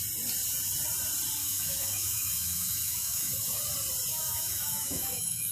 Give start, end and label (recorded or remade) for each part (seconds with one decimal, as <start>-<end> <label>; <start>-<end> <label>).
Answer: 0.0-1.4 recorded; 1.4-3.6 remade; 3.6-4.1 recorded; 4.1-5.5 remade